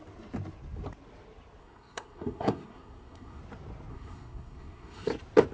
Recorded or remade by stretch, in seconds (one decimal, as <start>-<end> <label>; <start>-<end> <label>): 0.0-1.6 recorded; 1.6-3.4 remade; 3.4-3.9 recorded; 3.9-5.1 remade; 5.1-5.5 recorded